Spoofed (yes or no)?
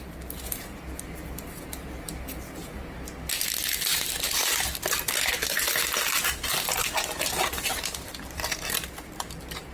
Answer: no